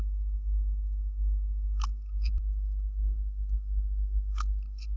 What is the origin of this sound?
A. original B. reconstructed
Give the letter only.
B